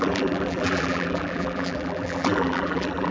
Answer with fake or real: fake